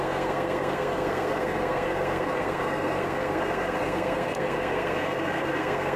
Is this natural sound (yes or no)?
no